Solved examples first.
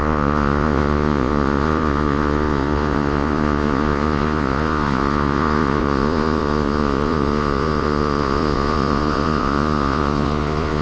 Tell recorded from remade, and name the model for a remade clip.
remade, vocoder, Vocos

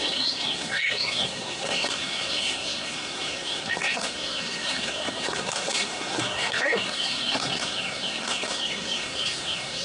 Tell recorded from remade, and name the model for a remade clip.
remade, codec, SNAC